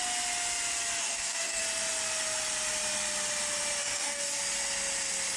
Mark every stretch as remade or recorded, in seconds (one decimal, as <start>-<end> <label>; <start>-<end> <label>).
0.0-1.0 recorded; 1.0-1.6 remade; 1.6-3.8 recorded; 3.8-4.4 remade; 4.4-5.4 recorded